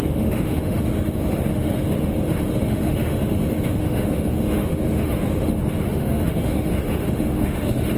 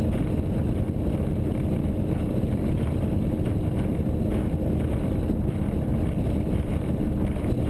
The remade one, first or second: first